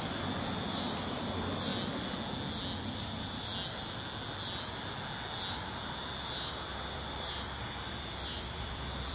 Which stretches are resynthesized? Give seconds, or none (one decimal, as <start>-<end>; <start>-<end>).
0.0-1.7; 3.0-3.5; 5.5-9.1